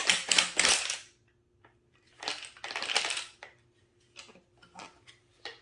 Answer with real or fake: real